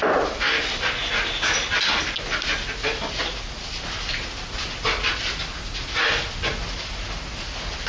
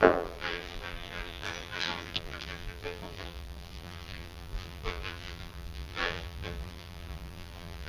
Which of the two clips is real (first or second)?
first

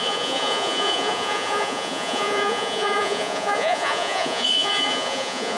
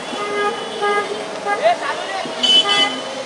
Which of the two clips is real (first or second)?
second